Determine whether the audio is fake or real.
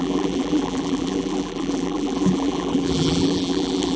fake